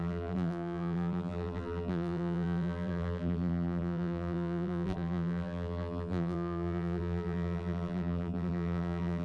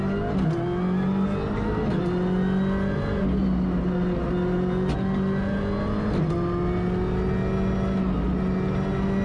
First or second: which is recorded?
second